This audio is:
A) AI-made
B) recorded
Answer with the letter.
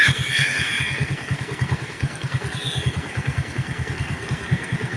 A